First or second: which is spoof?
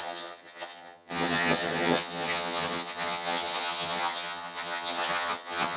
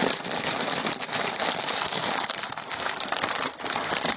first